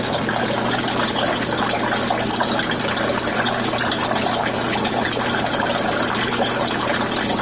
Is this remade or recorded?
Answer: recorded